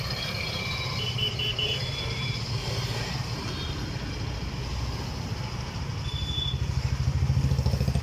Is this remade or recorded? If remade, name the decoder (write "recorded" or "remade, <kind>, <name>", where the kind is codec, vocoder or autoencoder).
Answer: recorded